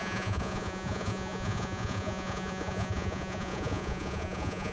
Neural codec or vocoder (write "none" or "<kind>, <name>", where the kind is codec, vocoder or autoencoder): vocoder, Vocos